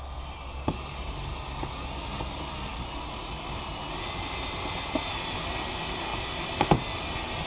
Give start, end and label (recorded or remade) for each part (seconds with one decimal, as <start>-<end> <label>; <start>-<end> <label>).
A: 0.0-7.5 recorded